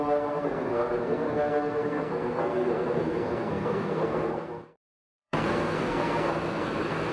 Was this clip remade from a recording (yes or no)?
yes